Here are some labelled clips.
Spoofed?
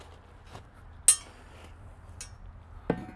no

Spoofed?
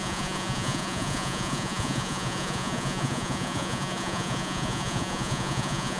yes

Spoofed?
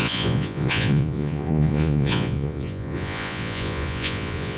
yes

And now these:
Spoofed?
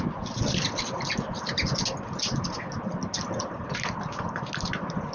no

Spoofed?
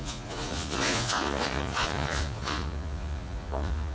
yes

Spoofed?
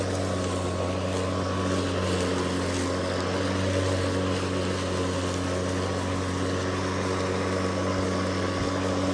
no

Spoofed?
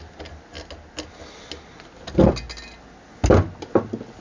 no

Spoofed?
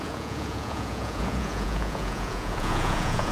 yes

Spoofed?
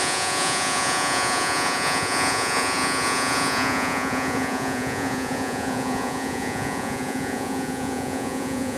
yes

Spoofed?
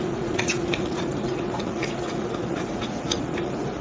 yes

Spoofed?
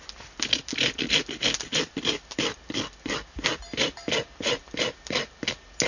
no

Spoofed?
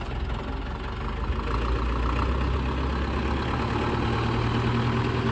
no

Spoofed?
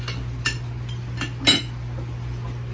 no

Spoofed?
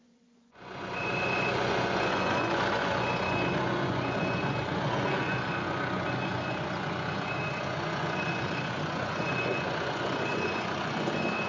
yes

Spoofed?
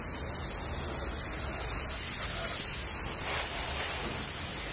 no